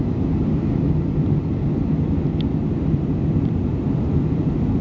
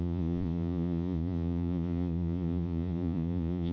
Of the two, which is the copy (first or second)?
second